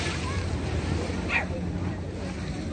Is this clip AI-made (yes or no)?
no